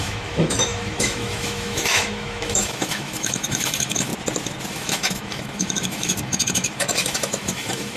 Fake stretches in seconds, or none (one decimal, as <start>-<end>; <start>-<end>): 0.0-4.1; 4.7-8.0